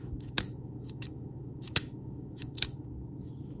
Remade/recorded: remade